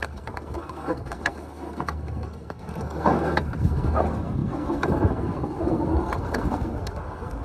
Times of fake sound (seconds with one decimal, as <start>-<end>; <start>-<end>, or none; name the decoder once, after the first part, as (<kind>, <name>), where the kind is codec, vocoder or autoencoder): 0.0-7.4 (codec, SNAC)